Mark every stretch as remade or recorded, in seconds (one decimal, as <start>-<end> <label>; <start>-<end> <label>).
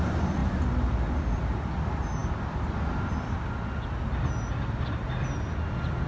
0.0-6.1 recorded